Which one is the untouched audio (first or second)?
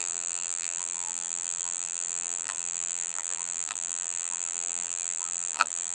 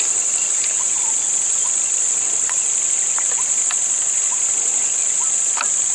second